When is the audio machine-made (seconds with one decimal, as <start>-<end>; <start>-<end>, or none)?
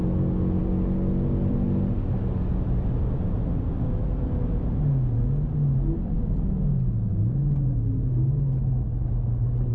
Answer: none